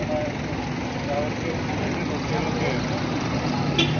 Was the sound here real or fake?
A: real